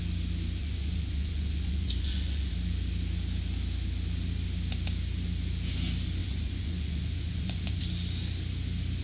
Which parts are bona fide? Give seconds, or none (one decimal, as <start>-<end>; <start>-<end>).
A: 0.0-0.6; 2.5-6.2; 7.8-9.0

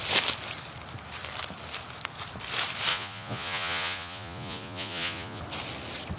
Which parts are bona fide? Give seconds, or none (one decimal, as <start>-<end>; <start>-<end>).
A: 0.0-2.9; 5.4-6.2

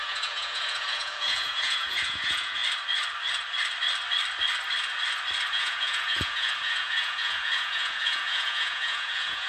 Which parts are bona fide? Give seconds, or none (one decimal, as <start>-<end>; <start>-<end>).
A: 2.6-5.5

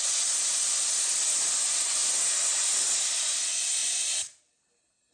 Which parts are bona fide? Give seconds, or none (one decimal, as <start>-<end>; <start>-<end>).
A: 0.0-5.1